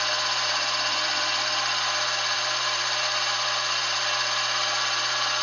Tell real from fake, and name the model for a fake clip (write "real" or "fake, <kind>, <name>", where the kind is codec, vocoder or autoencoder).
fake, vocoder, BigVGAN v2